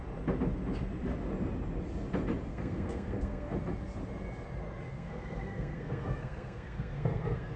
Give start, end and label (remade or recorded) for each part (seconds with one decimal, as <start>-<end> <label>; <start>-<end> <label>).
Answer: 0.0-2.5 recorded; 2.5-3.5 remade; 3.5-4.9 recorded; 4.9-7.6 remade